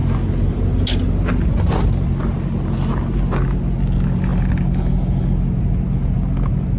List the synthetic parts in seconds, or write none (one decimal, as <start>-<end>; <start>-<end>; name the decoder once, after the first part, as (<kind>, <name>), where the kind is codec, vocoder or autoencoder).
none